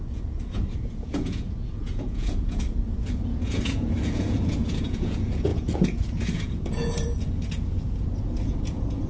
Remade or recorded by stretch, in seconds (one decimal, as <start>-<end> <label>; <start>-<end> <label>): 0.0-9.1 remade